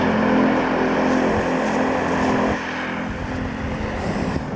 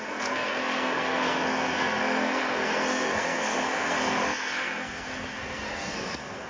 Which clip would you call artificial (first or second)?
second